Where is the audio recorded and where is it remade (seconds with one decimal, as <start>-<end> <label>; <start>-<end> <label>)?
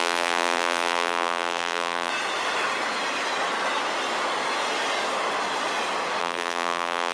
0.0-2.1 remade; 2.1-6.2 recorded; 6.2-7.1 remade